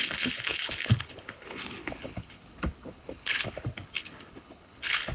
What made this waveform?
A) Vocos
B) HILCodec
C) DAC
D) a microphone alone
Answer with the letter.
B